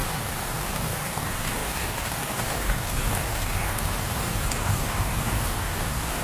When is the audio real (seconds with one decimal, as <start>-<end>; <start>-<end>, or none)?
none